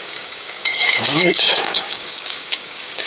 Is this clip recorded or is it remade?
remade